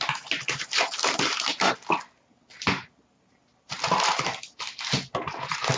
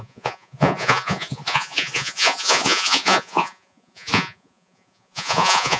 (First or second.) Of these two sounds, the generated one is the second